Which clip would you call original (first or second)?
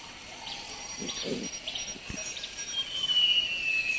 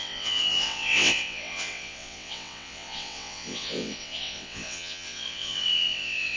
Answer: first